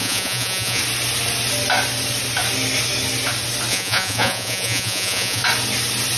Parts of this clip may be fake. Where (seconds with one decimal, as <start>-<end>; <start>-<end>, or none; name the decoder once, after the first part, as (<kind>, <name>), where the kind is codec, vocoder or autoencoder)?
0.0-0.8 (vocoder, Vocos); 3.7-5.4